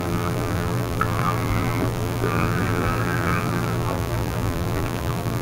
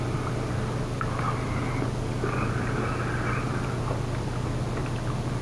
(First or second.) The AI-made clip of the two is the first